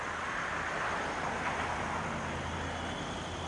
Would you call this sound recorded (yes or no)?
yes